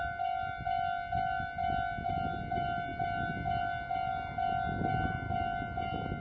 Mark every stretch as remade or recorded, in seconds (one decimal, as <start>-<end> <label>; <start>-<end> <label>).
0.0-6.2 recorded